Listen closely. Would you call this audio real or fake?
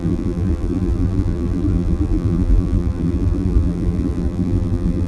fake